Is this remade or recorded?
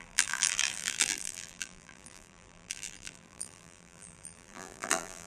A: remade